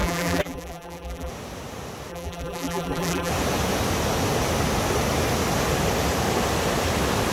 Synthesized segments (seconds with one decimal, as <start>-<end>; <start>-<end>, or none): 0.0-1.3; 2.1-3.3